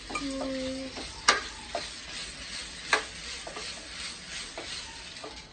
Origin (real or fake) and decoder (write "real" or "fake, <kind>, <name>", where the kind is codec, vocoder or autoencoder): real